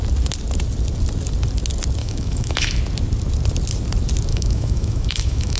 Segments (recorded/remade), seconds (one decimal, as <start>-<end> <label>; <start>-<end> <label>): 0.0-2.0 recorded; 2.0-2.8 remade; 2.8-4.3 recorded; 4.3-5.6 remade